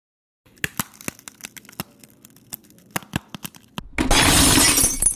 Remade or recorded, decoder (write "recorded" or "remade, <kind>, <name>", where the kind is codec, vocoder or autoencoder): recorded